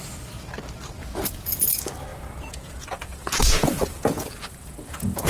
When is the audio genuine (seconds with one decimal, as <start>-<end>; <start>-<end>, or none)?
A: 0.0-1.0; 1.6-2.1